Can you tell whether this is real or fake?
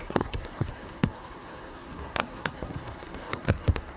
fake